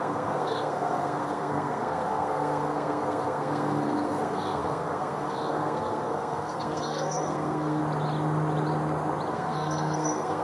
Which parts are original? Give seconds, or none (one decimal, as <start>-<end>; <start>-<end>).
7.8-9.3